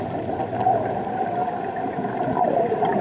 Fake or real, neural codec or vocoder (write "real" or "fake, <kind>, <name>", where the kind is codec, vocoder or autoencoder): real